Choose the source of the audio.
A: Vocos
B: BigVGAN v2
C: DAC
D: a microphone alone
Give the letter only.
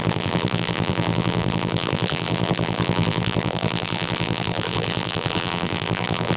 B